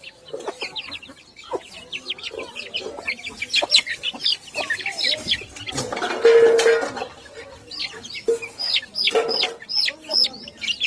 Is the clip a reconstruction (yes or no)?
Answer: no